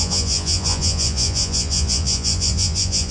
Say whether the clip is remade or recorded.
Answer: remade